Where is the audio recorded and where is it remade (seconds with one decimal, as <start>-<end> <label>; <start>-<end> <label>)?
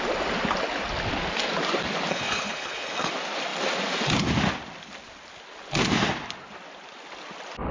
0.0-2.1 recorded; 2.1-3.1 remade; 3.1-7.7 recorded